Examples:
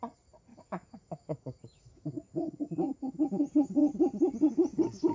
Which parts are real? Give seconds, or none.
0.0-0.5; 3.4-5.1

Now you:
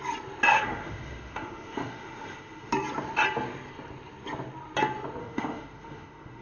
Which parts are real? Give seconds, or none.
0.0-0.5; 2.7-5.2

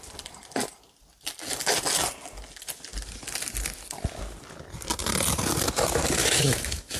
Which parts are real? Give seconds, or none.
0.0-6.2